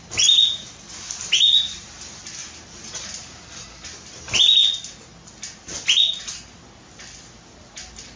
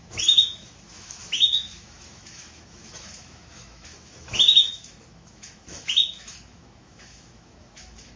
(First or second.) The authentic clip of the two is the first